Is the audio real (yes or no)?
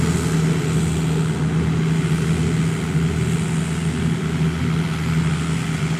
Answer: yes